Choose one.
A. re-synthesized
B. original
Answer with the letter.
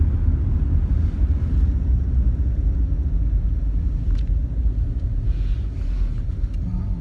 B